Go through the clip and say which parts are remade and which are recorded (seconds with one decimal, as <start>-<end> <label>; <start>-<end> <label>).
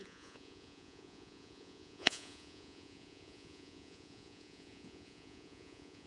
0.0-6.1 remade